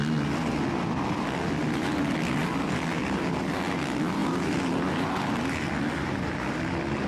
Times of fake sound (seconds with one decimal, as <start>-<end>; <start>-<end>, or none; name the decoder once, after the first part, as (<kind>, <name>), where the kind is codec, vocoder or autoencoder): none